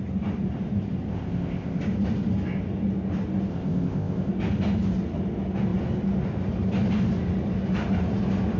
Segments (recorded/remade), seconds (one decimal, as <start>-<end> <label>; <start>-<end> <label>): 0.0-1.1 recorded; 1.1-1.8 remade; 1.8-3.5 recorded; 3.5-4.3 remade; 4.3-8.6 recorded